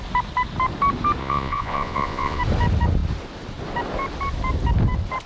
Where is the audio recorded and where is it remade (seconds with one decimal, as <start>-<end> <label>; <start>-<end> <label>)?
0.0-1.2 recorded; 1.2-2.4 remade; 2.4-5.3 recorded